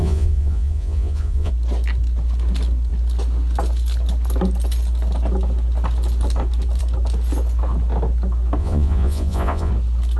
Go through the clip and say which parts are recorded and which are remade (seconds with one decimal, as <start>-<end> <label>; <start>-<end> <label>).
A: 0.0-1.5 remade; 1.5-8.6 recorded; 8.6-9.7 remade; 9.7-10.2 recorded